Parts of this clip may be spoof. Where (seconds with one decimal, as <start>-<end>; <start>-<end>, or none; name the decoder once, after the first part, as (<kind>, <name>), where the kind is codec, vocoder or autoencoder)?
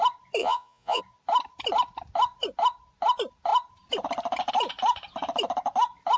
0.4-1.0 (vocoder, Vocos)